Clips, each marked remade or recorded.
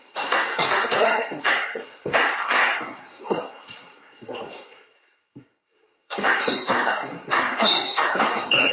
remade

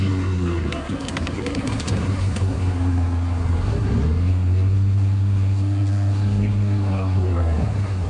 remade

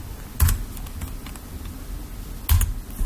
recorded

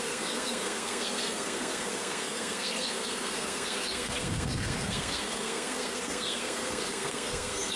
remade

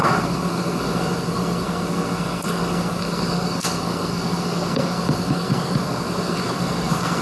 remade